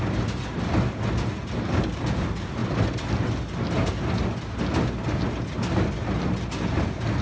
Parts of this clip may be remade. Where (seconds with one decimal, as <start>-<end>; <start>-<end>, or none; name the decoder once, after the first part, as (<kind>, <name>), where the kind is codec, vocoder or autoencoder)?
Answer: none

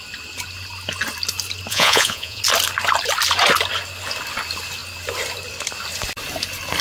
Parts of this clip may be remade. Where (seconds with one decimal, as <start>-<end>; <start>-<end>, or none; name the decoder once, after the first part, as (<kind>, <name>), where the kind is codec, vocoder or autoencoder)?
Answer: 1.7-2.4 (vocoder, Vocos)

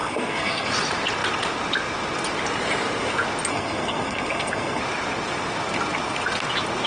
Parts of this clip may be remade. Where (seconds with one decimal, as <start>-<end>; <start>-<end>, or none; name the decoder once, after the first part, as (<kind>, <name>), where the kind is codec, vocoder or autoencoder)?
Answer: 0.0-0.7 (codec, SNAC); 3.5-4.8